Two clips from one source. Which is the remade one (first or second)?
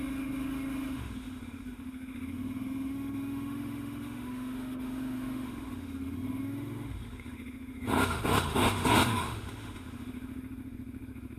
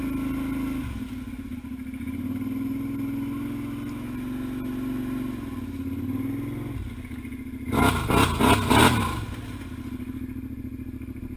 first